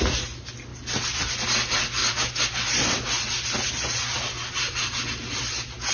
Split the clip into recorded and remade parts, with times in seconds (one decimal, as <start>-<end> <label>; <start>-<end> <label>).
0.0-5.9 recorded

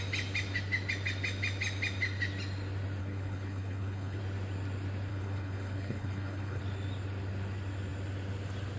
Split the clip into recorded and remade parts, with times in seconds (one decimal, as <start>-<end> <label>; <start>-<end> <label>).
0.0-3.0 recorded; 3.0-4.2 remade; 4.2-5.1 recorded; 5.1-6.6 remade; 6.6-8.8 recorded

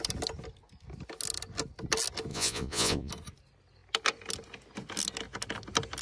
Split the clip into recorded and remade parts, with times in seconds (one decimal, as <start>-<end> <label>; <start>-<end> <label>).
0.0-2.3 recorded; 2.3-3.1 remade; 3.1-6.0 recorded

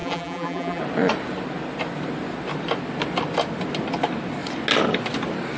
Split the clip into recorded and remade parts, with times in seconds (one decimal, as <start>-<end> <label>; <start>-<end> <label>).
0.0-0.8 remade; 0.8-5.6 recorded

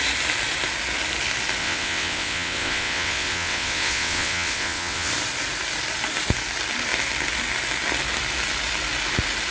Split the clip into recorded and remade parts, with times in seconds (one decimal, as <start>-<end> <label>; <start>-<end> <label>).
0.0-1.6 recorded; 1.6-5.1 remade; 5.1-9.5 recorded